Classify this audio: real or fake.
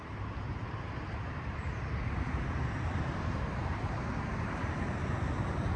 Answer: fake